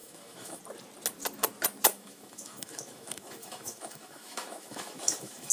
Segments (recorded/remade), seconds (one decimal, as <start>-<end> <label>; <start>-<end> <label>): 0.0-0.6 remade; 0.6-1.9 recorded; 1.9-5.5 remade